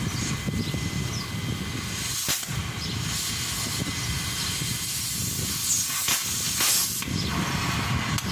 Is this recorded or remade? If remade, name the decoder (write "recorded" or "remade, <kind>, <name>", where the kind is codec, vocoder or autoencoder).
recorded